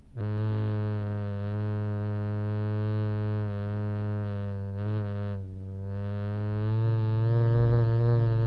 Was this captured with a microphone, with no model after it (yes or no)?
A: yes